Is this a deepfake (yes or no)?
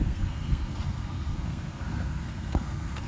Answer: yes